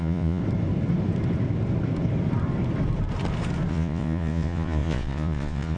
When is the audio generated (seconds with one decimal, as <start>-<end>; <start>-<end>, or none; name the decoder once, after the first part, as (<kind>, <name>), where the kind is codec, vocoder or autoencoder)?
0.0-0.4 (vocoder, Vocos); 3.7-5.8